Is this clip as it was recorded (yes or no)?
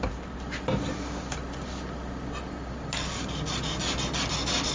yes